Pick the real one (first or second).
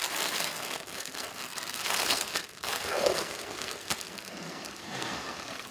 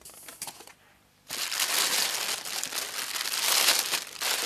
second